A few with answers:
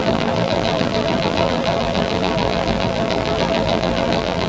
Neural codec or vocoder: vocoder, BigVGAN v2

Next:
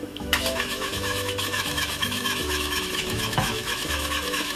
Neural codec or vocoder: autoencoder, DAC-VAE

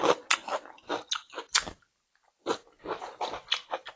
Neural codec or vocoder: none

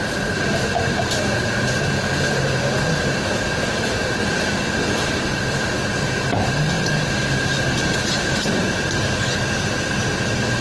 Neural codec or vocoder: vocoder, BigVGAN v2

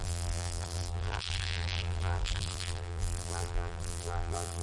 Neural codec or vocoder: vocoder, BigVGAN v2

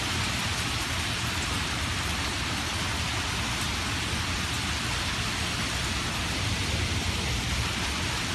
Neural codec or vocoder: none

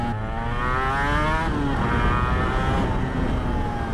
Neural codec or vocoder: none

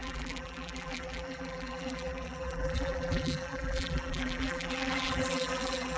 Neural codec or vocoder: vocoder, BigVGAN v2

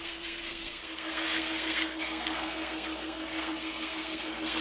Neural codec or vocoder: codec, SNAC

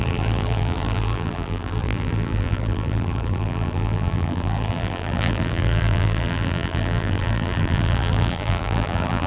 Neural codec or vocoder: vocoder, BigVGAN v2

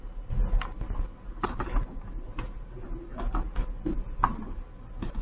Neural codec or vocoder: none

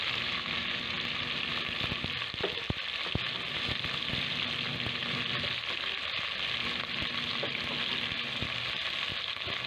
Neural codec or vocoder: none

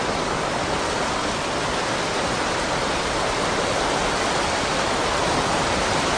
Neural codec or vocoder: none